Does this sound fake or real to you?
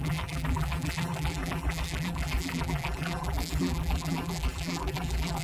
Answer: fake